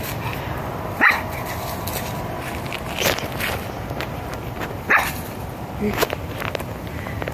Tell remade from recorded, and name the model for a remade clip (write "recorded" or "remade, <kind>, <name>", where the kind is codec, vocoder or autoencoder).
recorded